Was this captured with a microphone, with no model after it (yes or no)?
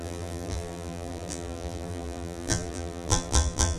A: no